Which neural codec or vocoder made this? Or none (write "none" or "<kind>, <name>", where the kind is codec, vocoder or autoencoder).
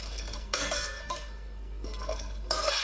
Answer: codec, SNAC